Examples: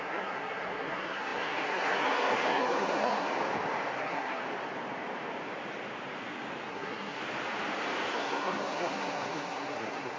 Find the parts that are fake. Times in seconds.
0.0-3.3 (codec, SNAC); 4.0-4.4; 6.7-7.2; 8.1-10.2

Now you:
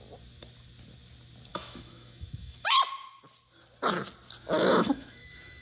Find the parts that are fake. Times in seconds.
1.5-2.7 (autoencoder, DAC-VAE); 4.7-5.6

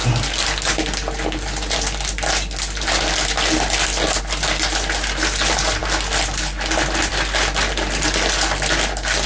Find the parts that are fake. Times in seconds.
none

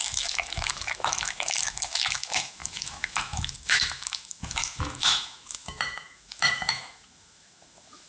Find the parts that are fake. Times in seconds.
0.0-8.1 (autoencoder, DAC-VAE)

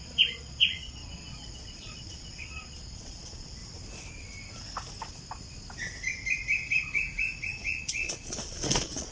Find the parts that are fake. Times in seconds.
0.0-3.6 (vocoder, Vocos); 7.5-9.1

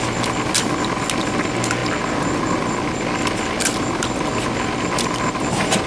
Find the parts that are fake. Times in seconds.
none

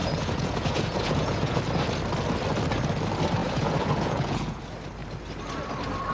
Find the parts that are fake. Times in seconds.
0.0-1.6 (vocoder, Vocos); 3.4-4.6